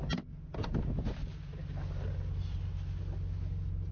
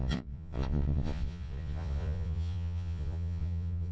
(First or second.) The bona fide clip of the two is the first